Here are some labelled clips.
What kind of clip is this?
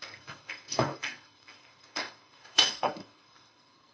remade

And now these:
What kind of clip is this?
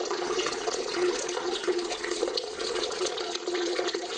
remade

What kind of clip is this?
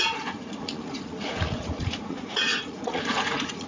remade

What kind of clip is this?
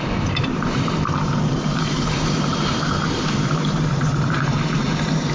remade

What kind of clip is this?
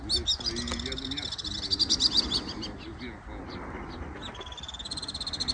recorded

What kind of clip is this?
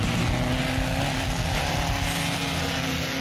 recorded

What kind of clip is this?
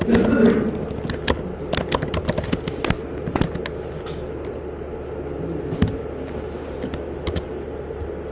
recorded